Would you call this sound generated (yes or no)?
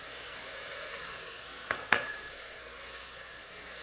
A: yes